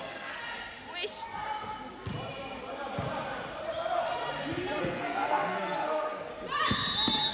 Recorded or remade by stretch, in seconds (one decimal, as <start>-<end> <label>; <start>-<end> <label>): 0.0-0.4 remade; 0.4-4.8 recorded; 4.8-6.3 remade; 6.3-7.3 recorded